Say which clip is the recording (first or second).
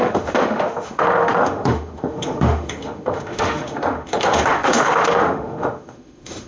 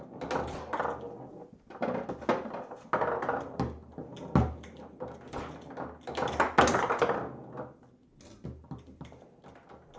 second